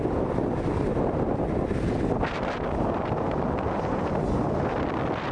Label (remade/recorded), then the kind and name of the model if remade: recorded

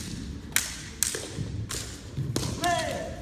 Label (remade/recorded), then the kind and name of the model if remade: recorded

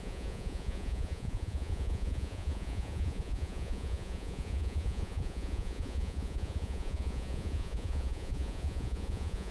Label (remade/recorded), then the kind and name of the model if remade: remade, vocoder, Vocos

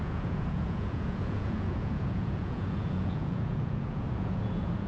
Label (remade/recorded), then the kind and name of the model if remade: remade, vocoder, Vocos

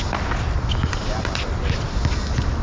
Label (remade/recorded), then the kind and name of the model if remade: recorded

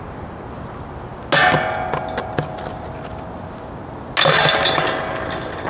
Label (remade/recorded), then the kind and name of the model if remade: recorded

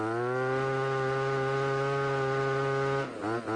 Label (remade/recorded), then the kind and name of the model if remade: recorded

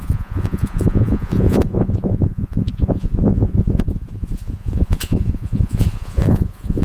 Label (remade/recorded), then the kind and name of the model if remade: remade, vocoder, Vocos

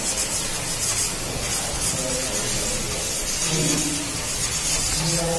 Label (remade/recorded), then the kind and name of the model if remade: recorded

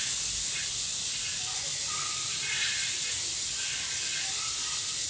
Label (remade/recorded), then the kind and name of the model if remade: recorded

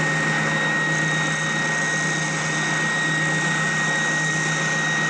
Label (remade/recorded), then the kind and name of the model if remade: recorded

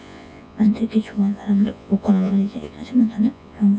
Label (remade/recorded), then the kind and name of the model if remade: remade, vocoder, Vocos